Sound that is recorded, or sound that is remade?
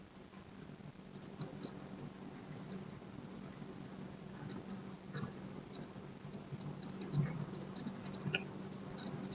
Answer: recorded